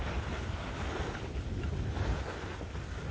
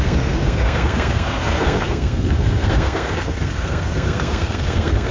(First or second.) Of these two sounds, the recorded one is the first